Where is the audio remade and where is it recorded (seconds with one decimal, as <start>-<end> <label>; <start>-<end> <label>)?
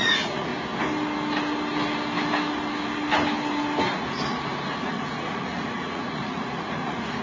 0.0-0.5 remade; 0.5-4.8 recorded; 4.8-7.2 remade